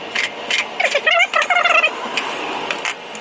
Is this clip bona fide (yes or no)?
yes